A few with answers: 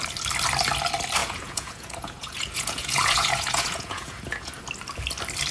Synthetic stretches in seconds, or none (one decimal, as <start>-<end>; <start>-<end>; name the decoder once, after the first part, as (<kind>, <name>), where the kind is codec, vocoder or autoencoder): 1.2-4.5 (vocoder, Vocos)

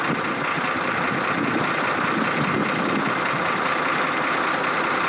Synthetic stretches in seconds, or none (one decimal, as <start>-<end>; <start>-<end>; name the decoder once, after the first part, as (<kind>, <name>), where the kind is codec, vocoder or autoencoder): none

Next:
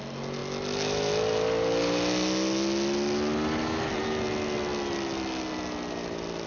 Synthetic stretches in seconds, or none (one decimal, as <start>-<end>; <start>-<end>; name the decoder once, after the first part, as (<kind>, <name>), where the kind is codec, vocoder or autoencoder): none

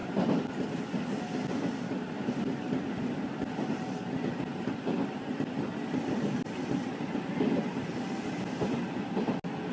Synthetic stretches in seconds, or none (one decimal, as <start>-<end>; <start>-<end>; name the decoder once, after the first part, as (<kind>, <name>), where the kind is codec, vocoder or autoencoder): none